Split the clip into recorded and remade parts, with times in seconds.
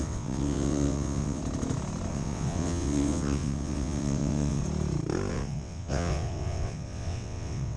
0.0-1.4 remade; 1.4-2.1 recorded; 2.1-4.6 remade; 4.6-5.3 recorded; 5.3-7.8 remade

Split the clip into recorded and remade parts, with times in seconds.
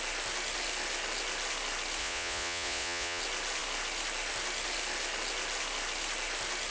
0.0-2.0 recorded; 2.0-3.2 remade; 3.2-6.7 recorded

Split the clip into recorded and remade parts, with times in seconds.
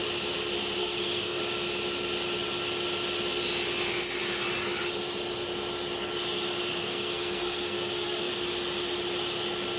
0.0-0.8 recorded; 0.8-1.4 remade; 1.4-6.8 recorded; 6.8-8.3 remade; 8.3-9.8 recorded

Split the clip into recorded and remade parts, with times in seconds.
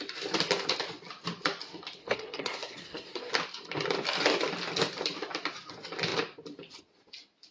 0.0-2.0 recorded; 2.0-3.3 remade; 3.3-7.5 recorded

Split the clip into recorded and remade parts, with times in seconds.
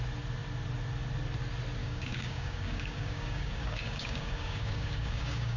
0.0-1.8 recorded; 1.8-5.6 remade